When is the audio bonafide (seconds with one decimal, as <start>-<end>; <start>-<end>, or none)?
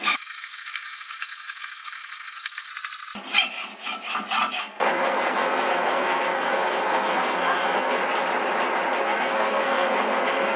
2.7-4.6; 8.0-9.0